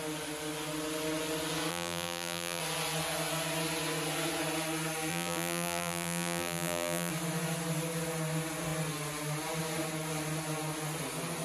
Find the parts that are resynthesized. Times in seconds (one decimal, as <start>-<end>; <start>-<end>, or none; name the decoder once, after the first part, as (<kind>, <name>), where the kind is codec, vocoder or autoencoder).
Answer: 1.7-2.6 (vocoder, BigVGAN v2); 5.1-7.1